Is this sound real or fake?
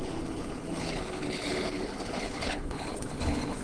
fake